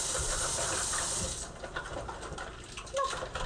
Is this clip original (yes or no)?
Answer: yes